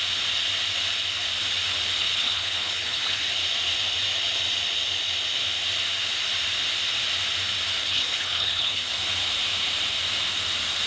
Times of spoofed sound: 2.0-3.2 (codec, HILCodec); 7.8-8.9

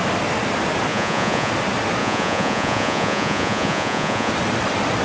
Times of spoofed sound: 0.9-1.5 (vocoder, Vocos); 2.0-4.3

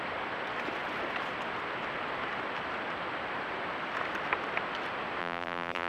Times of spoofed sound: 5.2-5.9 (vocoder, BigVGAN v2)

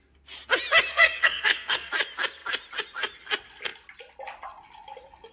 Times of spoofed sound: 0.9-1.9 (codec, SNAC)

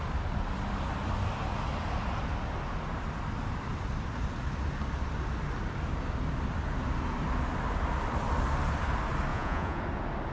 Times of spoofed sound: 9.3-9.8 (vocoder, Vocos)

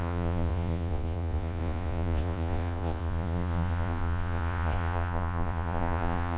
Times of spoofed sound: 0.0-6.4 (vocoder, Vocos)

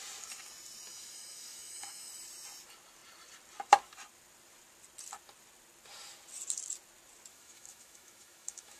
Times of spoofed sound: 0.9-2.1 (autoencoder, DAC-VAE); 7.3-8.8

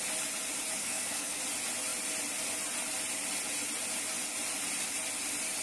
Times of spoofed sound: 0.8-1.4 (codec, SNAC)